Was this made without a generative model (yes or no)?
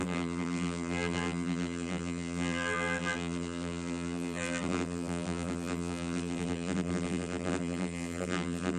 no